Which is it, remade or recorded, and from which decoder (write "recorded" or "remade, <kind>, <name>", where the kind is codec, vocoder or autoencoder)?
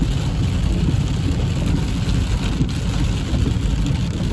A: recorded